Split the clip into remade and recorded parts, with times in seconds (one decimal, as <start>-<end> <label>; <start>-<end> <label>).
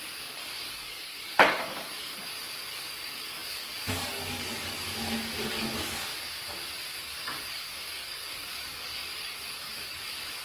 0.0-4.9 remade; 4.9-5.5 recorded; 5.5-6.1 remade; 6.1-7.0 recorded; 7.0-10.4 remade